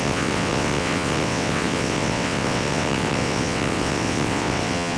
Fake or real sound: fake